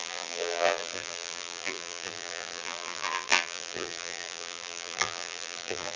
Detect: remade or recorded remade